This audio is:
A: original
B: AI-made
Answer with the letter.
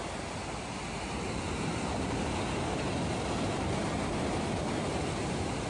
A